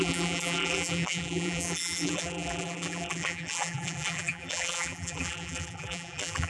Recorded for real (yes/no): no